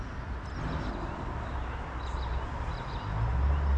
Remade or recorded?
recorded